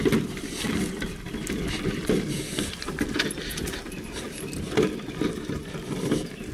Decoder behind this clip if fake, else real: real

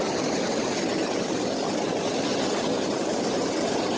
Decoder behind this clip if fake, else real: real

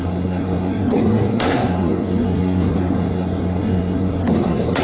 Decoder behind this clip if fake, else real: fake, codec, SNAC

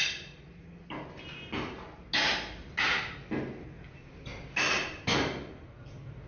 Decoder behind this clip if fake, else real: real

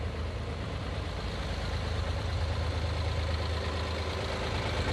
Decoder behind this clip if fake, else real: real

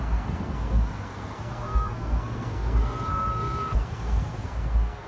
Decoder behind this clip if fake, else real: fake, codec, SNAC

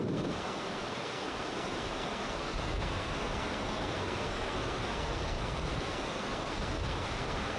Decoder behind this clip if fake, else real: fake, codec, SNAC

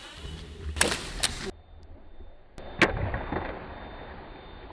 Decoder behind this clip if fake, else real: real